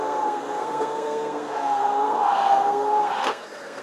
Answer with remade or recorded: remade